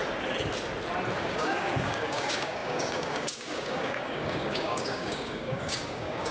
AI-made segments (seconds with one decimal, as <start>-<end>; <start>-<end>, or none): 1.2-6.3

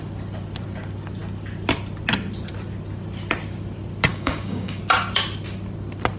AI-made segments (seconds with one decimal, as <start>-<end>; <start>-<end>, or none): 4.1-4.8

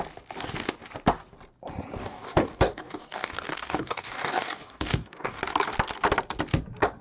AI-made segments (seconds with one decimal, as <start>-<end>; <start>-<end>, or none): 2.0-5.4